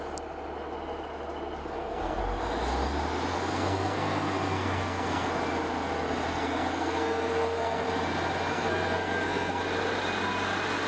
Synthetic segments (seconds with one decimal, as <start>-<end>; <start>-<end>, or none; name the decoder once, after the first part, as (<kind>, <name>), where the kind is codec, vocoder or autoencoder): 1.6-2.2 (codec, SNAC); 3.3-5.3; 6.3-7.9; 8.5-9.6